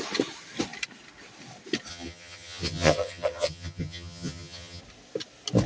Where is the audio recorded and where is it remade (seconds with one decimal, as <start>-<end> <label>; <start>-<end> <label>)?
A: 0.0-1.9 recorded; 1.9-4.8 remade; 4.8-5.7 recorded